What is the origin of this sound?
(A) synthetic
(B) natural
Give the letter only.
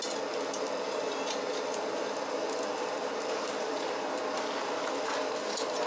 B